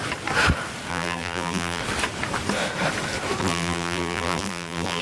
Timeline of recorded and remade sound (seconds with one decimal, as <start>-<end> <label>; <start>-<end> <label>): 0.0-0.9 recorded; 0.9-1.8 remade; 1.8-3.4 recorded; 3.4-5.0 remade